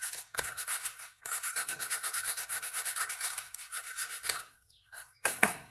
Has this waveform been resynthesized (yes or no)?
yes